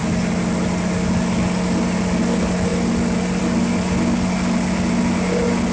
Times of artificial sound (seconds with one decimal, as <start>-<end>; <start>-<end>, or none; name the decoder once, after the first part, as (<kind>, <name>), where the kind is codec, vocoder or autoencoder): none